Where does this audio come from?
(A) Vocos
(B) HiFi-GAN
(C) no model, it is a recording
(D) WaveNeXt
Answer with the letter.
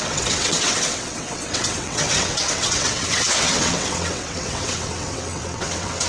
D